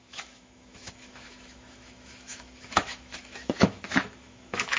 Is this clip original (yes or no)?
no